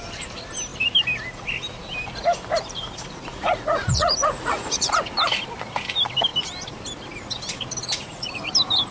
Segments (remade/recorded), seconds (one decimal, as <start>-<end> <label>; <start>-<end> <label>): 0.0-3.3 recorded; 3.3-4.9 remade; 4.9-7.8 recorded; 7.8-8.5 remade; 8.5-8.9 recorded